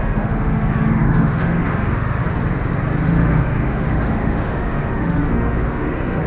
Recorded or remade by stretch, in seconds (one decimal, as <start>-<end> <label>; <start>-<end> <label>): 0.0-2.2 remade; 2.2-3.0 recorded; 3.0-6.3 remade